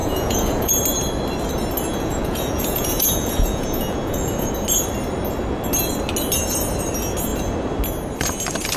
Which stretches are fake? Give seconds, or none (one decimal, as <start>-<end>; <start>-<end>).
0.0-0.7; 1.9-4.5

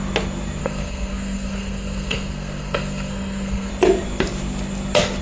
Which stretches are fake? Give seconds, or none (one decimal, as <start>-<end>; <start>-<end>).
0.6-3.7

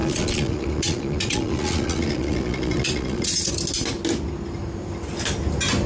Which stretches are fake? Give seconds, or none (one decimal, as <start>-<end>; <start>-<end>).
0.0-3.5

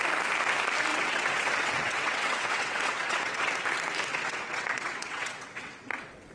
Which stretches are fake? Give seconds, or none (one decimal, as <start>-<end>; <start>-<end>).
0.9-3.5; 4.1-6.3

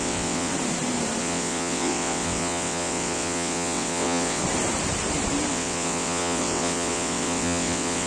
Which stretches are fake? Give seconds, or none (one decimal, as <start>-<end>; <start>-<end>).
0.0-0.5; 1.2-4.4; 5.5-8.1